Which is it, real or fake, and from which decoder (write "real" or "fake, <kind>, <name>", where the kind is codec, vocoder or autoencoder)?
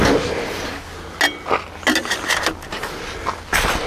real